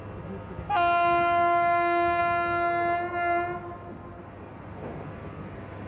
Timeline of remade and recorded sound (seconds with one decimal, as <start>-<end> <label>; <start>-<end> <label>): 0.0-5.9 recorded